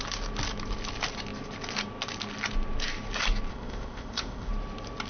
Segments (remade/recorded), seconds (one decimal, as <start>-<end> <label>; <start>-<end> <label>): 0.0-3.5 recorded; 3.5-4.5 remade; 4.5-5.1 recorded

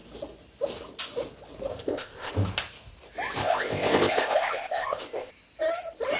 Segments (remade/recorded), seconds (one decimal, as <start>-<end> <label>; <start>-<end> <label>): 0.0-1.7 recorded; 1.7-2.3 remade; 2.3-3.4 recorded; 3.4-5.3 remade; 5.3-6.2 recorded

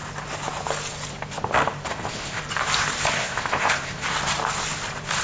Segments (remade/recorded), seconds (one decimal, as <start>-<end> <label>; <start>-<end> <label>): 0.0-1.9 recorded; 1.9-2.4 remade; 2.4-3.2 recorded; 3.2-4.0 remade; 4.0-5.2 recorded

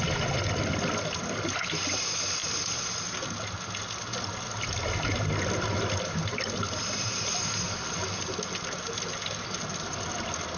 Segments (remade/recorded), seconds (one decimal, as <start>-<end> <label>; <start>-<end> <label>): 0.0-10.6 recorded

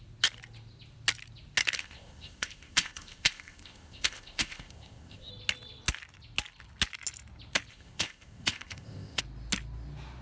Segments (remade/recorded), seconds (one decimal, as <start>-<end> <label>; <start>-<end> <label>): 0.0-1.8 recorded; 1.8-5.3 remade; 5.3-7.7 recorded; 7.7-9.2 remade; 9.2-10.2 recorded

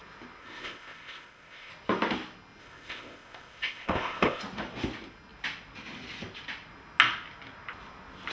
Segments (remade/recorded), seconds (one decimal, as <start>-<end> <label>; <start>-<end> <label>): 0.0-0.4 recorded; 0.4-1.7 remade; 1.7-2.6 recorded; 2.6-4.4 remade; 4.4-8.3 recorded